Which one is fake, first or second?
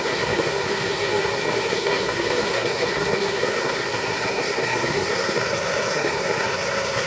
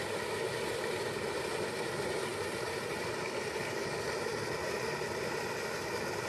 first